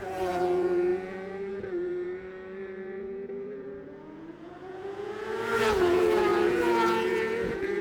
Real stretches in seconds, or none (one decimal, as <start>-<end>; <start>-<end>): none